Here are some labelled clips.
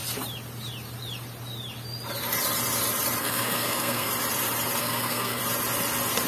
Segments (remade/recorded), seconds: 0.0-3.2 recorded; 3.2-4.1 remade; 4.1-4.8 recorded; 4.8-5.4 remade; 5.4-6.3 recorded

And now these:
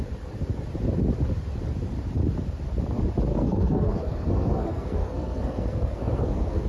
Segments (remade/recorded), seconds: 0.0-3.3 recorded; 3.3-6.7 remade

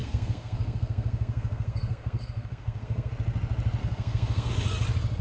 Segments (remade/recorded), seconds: 0.0-3.1 remade; 3.1-3.8 recorded; 3.8-4.5 remade; 4.5-5.2 recorded

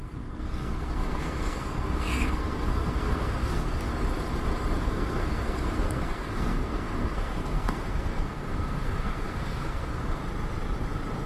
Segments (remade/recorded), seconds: 0.0-3.9 remade; 3.9-4.8 recorded; 4.8-10.2 remade; 10.2-11.3 recorded

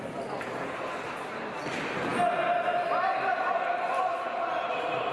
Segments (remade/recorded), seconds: 0.0-5.1 recorded

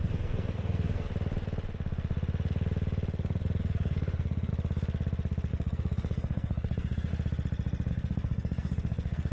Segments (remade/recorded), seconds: 0.0-1.1 remade; 1.1-3.6 recorded; 3.6-4.5 remade; 4.5-5.5 recorded; 5.5-7.1 remade; 7.1-7.9 recorded; 7.9-9.3 remade